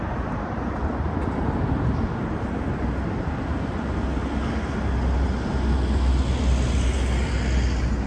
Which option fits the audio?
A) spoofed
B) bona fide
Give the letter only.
B